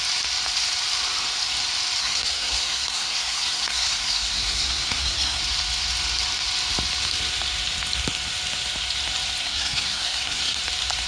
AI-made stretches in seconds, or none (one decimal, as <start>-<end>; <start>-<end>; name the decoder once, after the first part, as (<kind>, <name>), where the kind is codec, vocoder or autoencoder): 2.0-5.4 (codec, SNAC); 9.4-10.6